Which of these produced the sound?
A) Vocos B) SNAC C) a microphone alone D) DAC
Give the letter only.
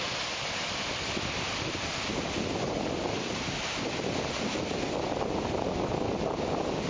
C